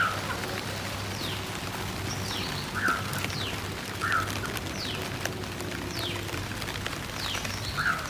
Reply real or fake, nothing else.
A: fake